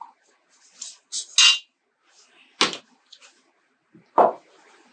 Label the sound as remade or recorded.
recorded